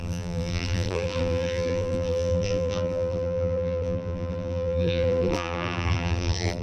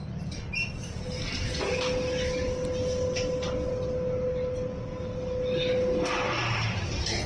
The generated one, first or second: first